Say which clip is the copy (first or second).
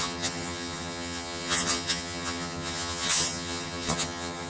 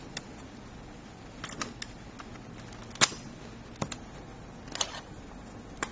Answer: first